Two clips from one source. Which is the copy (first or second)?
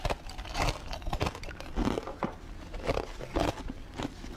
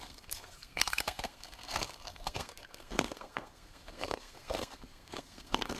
second